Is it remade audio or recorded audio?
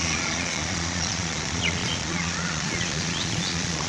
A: remade